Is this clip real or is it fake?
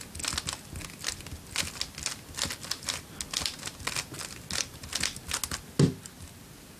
real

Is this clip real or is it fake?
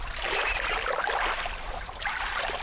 real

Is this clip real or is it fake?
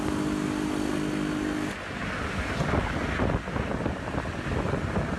real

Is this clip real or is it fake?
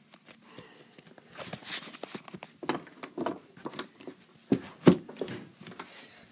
real